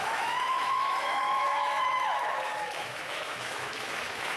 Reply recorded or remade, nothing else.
remade